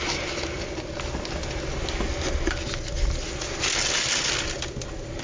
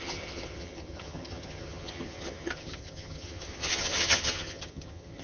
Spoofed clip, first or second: second